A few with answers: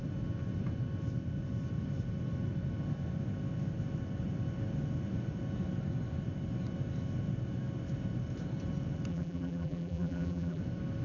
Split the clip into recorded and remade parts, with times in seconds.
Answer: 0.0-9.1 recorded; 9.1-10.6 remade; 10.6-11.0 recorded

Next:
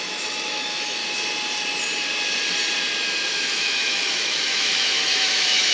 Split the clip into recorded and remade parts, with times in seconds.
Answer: 0.0-1.0 remade; 1.0-3.3 recorded; 3.3-5.7 remade

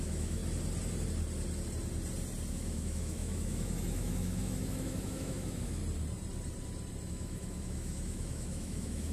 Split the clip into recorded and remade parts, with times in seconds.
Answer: 0.0-0.4 remade; 0.4-2.5 recorded; 2.5-5.8 remade; 5.8-7.1 recorded; 7.1-9.1 remade

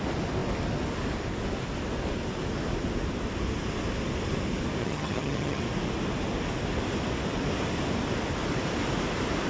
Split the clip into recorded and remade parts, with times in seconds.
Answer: 0.0-4.8 recorded; 4.8-5.6 remade; 5.6-9.5 recorded

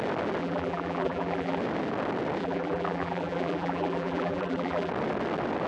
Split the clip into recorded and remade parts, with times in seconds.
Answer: 0.0-0.4 recorded; 0.4-1.6 remade; 1.6-2.4 recorded; 2.4-4.9 remade; 4.9-5.7 recorded

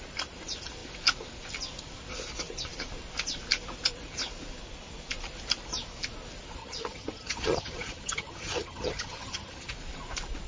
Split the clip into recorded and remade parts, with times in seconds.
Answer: 0.0-6.6 recorded; 6.6-9.7 remade; 9.7-10.5 recorded

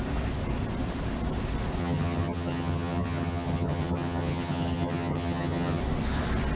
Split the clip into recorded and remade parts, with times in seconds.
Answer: 0.0-1.8 recorded; 1.8-5.8 remade; 5.8-6.6 recorded

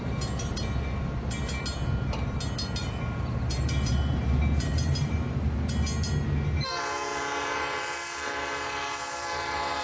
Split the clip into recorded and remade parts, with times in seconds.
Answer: 0.0-2.8 recorded; 2.8-5.4 remade; 5.4-7.1 recorded; 7.1-9.8 remade